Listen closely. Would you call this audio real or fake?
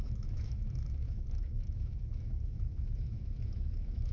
fake